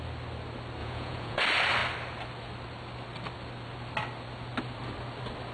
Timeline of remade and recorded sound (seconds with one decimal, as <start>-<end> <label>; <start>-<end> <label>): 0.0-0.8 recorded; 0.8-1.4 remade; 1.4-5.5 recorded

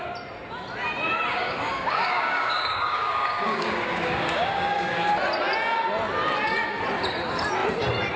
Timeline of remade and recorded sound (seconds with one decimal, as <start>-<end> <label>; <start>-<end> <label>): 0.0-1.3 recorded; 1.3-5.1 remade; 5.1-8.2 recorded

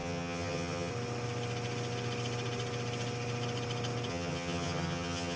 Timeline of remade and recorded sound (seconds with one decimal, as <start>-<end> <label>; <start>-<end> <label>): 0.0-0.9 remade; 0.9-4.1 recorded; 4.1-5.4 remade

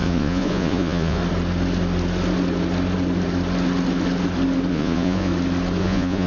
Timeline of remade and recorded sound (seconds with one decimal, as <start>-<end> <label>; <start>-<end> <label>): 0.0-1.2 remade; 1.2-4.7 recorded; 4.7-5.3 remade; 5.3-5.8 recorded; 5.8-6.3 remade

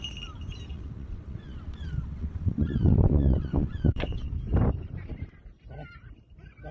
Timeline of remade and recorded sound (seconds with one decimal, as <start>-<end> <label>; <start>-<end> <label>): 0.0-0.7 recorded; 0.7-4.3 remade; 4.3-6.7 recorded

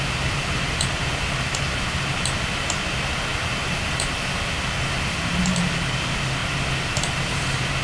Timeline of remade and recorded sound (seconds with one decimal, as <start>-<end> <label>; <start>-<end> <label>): 0.0-7.8 recorded

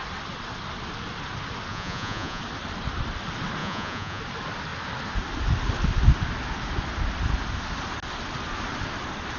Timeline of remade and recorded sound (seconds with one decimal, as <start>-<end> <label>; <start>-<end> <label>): 0.0-1.7 recorded; 1.7-2.4 remade; 2.4-3.6 recorded; 3.6-4.2 remade; 4.2-9.4 recorded